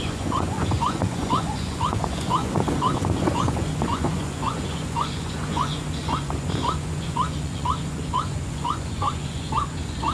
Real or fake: fake